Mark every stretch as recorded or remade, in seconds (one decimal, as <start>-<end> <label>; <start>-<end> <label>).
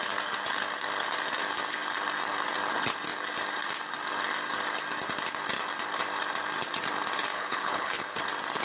0.0-7.3 recorded; 7.3-8.2 remade; 8.2-8.6 recorded